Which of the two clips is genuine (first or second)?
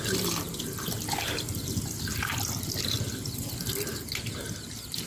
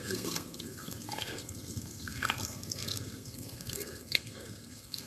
first